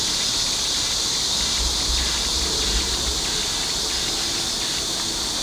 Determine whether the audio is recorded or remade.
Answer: recorded